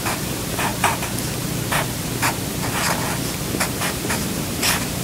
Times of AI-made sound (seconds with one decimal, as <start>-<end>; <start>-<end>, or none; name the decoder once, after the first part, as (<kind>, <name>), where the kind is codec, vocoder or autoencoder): 0.0-0.7 (vocoder, BigVGAN v2); 3.5-5.0